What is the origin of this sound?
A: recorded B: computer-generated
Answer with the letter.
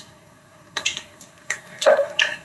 B